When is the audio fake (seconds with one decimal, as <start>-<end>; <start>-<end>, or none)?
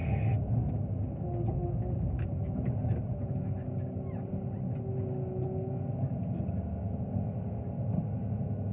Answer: none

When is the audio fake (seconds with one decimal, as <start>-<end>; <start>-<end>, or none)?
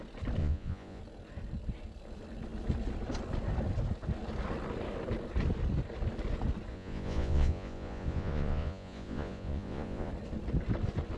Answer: 0.4-1.0; 6.7-10.1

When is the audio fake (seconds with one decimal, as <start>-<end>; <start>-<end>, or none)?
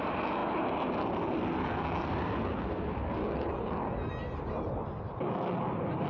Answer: none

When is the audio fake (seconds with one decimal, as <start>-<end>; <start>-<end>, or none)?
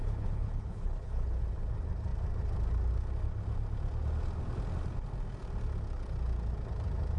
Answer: 0.0-1.4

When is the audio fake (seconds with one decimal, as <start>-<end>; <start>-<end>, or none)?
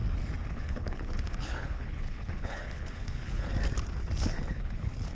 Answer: 0.5-3.5; 4.5-5.1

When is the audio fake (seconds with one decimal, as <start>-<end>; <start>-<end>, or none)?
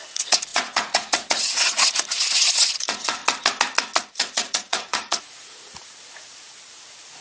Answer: 0.0-3.2; 4.1-7.2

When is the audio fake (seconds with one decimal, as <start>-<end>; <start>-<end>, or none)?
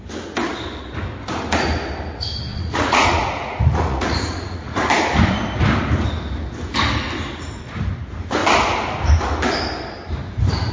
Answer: 2.5-4.9